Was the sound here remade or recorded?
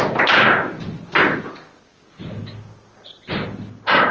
recorded